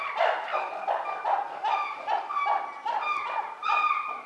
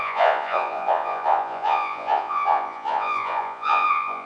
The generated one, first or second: second